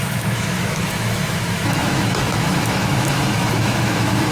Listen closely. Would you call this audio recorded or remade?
remade